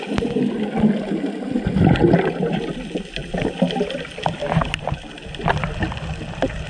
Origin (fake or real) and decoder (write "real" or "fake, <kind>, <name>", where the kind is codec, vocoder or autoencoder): real